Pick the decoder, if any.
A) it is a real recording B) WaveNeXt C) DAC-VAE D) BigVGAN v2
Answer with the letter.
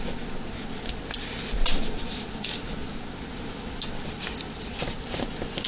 A